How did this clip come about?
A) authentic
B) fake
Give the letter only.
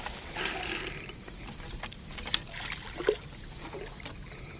A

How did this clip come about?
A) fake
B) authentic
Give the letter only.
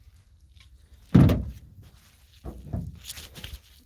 B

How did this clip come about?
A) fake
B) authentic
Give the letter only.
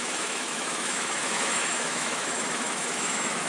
A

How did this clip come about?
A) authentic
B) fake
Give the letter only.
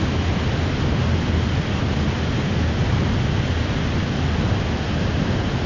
A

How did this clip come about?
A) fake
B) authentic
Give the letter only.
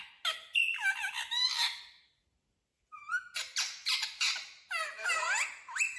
B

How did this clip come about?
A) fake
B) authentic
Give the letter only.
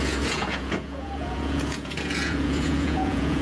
A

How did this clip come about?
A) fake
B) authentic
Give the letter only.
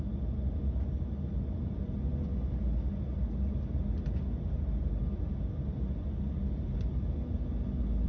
B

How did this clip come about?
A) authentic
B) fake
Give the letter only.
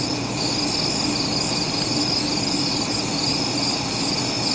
A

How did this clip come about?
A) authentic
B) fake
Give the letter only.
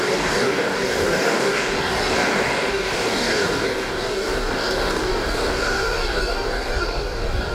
B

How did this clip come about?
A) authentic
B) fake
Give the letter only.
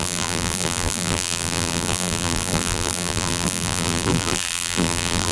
B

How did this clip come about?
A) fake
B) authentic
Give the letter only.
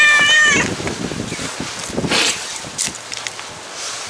B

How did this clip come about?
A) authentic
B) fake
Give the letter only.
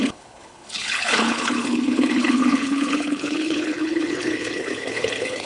B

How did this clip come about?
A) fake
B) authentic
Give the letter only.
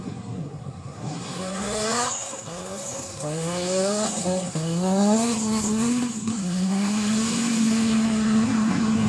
A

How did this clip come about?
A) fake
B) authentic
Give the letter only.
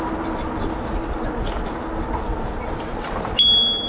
B